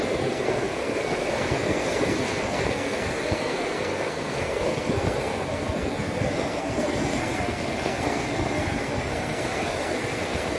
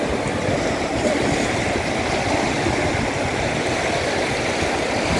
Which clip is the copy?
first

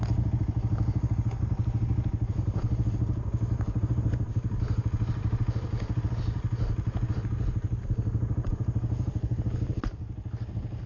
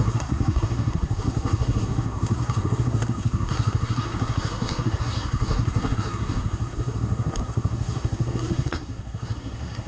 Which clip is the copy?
second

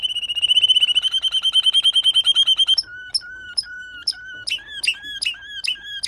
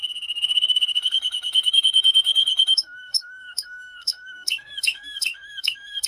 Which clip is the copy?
second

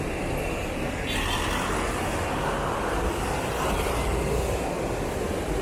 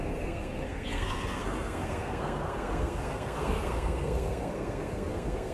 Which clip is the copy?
second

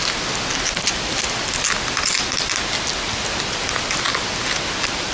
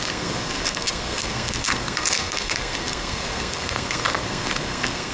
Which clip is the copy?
second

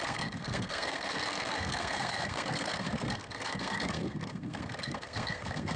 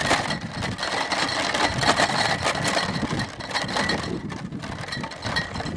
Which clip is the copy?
first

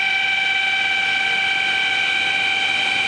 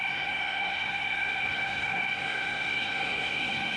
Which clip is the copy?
second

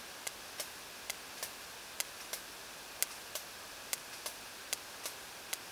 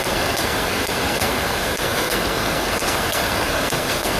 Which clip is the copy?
second